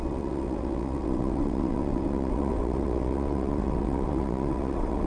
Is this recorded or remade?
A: remade